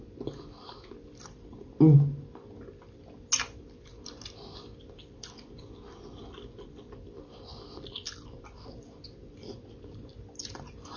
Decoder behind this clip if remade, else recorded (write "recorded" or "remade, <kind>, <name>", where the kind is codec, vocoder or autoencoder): recorded